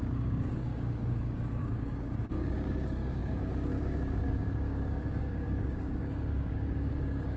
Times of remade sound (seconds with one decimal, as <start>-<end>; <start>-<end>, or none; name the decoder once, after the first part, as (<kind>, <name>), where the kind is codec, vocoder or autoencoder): 0.0-7.4 (codec, DAC)